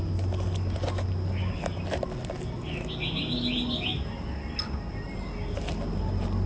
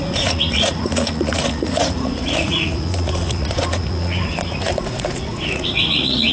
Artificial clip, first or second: second